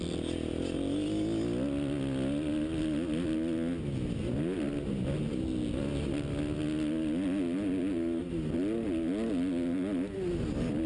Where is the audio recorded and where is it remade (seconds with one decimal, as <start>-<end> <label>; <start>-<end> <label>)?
0.0-10.9 recorded